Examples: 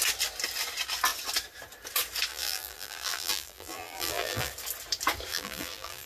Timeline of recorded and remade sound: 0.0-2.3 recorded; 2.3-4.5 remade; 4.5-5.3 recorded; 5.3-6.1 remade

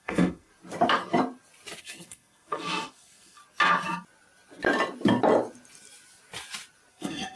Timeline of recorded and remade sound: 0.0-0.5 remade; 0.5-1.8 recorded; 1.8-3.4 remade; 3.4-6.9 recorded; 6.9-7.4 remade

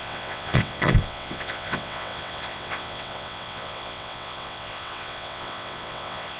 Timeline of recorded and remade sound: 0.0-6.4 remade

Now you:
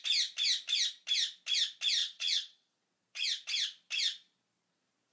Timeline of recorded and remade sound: 0.0-2.0 recorded; 2.0-2.8 remade; 2.8-5.1 recorded

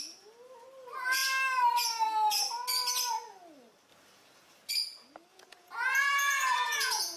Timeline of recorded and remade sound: 0.0-5.3 recorded; 5.3-7.2 remade